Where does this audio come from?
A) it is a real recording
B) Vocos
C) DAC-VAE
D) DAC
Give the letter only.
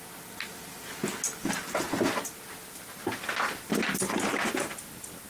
A